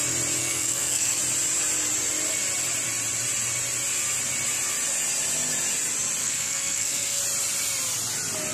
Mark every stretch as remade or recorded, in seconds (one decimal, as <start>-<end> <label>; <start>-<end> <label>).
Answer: 0.0-0.4 recorded; 0.4-1.2 remade; 1.2-6.2 recorded; 6.2-7.2 remade; 7.2-8.5 recorded